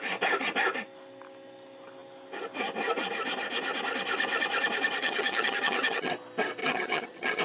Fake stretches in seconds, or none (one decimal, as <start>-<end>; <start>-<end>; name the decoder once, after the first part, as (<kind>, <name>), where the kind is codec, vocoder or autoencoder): 5.0-6.1 (vocoder, HiFi-GAN); 6.6-7.4